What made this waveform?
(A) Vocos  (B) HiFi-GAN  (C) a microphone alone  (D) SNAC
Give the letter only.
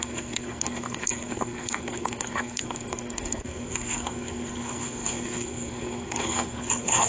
D